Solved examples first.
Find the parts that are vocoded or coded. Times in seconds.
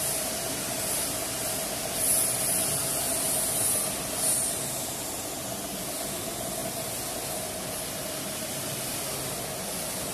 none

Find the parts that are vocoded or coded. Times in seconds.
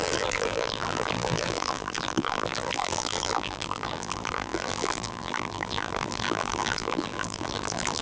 0.0-8.0 (vocoder, BigVGAN v2)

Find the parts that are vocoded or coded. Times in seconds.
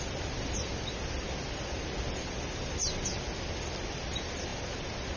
none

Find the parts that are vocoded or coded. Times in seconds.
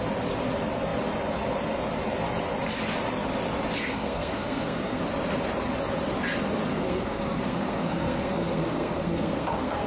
3.8-5.0 (codec, SNAC); 6.7-9.9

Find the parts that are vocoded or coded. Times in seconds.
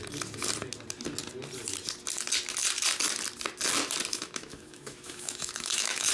4.1-6.1 (autoencoder, DAC-VAE)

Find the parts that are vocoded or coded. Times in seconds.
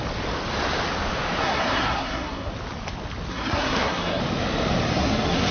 1.4-2.5 (codec, SNAC); 3.3-4.2; 4.9-5.5